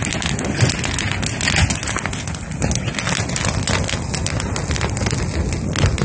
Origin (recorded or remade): recorded